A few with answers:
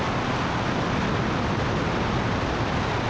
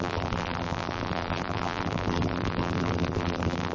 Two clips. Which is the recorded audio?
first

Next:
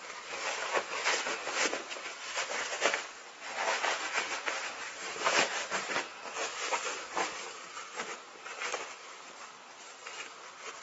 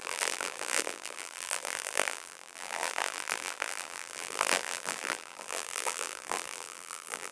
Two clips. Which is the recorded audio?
first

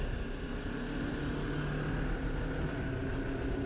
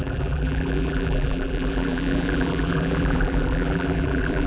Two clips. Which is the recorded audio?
first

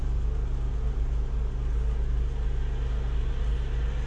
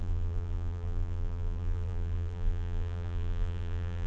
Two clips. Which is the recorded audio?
first